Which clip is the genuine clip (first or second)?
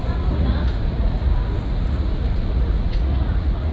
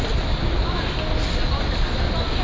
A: second